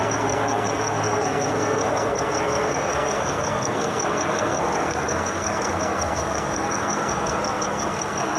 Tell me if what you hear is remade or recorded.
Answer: remade